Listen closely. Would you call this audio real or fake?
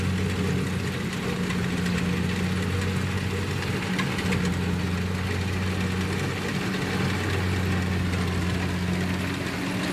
real